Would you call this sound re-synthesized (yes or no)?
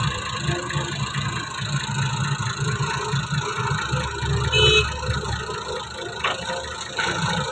no